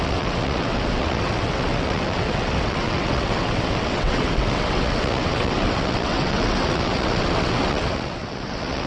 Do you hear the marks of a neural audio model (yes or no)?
yes